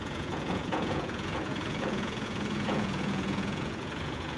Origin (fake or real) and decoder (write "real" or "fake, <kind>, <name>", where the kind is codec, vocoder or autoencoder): fake, vocoder, Vocos